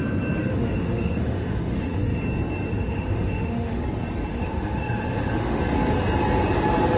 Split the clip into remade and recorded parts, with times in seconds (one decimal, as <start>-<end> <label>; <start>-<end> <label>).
0.0-0.4 recorded; 0.4-2.2 remade; 2.2-2.7 recorded; 2.7-3.8 remade; 3.8-4.3 recorded; 4.3-5.6 remade; 5.6-7.0 recorded